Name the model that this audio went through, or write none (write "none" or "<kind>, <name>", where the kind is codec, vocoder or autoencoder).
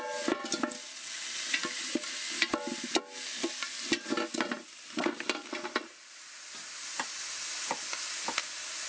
none